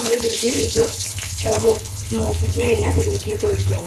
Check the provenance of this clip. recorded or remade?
remade